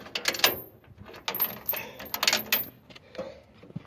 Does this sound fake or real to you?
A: real